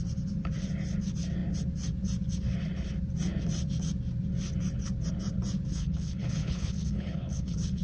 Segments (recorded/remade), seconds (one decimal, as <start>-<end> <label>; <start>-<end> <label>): 0.0-5.7 recorded; 5.7-7.8 remade